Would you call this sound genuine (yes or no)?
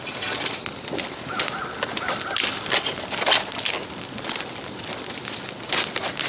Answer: yes